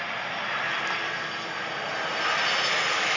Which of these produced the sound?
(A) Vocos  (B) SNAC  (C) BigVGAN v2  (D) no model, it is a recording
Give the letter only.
D